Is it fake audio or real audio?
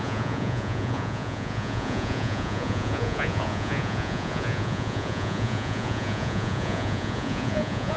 fake